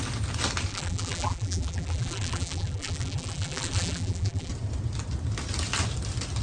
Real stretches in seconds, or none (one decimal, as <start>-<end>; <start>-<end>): 0.0-0.7; 4.5-6.4